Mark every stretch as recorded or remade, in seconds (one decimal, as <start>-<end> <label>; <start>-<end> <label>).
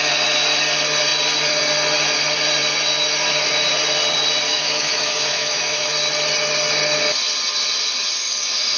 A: 0.0-4.5 recorded; 4.5-5.9 remade; 5.9-8.8 recorded